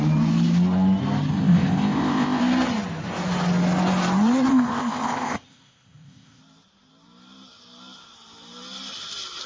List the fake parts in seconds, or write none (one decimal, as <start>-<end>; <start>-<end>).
1.3-2.4; 4.5-6.4